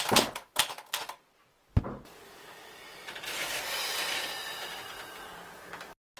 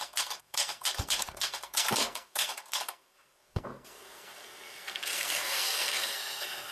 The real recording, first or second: first